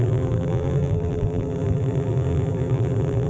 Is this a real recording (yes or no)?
no